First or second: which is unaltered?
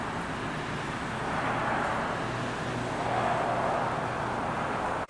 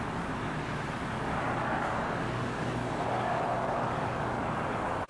first